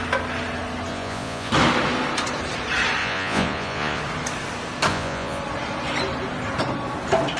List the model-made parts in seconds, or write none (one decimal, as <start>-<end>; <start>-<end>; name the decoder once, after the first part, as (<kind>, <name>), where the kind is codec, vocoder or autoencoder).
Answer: 0.9-1.5 (vocoder, Vocos); 3.0-4.0; 4.9-5.4